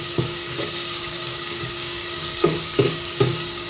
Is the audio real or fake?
fake